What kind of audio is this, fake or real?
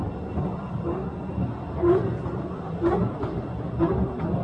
real